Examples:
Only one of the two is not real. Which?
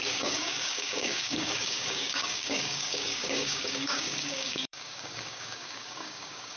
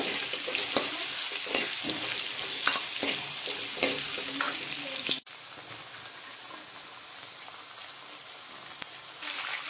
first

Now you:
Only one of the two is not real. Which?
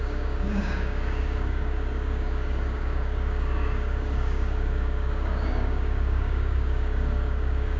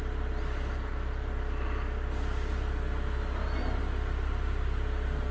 first